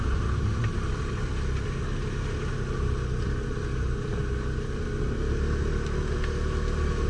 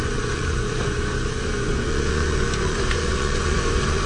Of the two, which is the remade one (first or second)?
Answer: second